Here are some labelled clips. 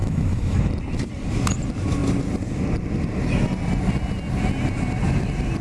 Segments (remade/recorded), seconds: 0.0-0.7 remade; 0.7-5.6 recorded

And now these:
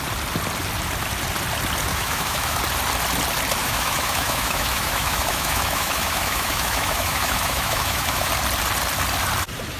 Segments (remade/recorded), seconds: 0.0-1.9 recorded; 1.9-2.6 remade; 2.6-3.6 recorded; 3.6-8.3 remade; 8.3-9.8 recorded

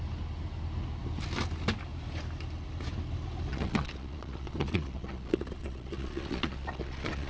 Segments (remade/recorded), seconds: 0.0-3.5 recorded; 3.5-7.3 remade

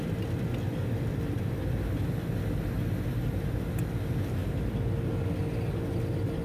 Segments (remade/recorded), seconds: 0.0-6.4 recorded

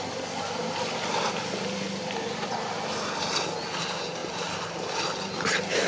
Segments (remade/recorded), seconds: 0.0-5.9 recorded

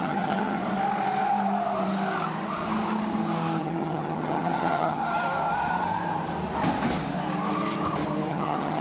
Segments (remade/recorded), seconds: 0.0-0.6 remade; 0.6-3.6 recorded; 3.6-5.0 remade; 5.0-8.3 recorded; 8.3-8.8 remade

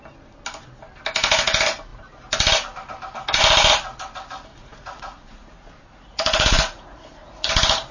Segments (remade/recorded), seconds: 0.0-4.5 recorded; 4.5-7.5 remade; 7.5-7.9 recorded